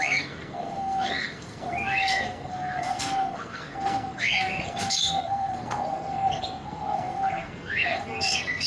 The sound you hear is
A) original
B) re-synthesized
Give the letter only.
B